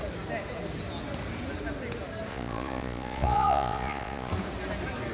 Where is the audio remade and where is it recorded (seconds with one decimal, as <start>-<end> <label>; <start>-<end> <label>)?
0.0-2.3 recorded; 2.3-4.3 remade; 4.3-5.1 recorded